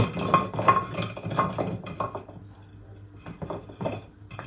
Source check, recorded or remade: recorded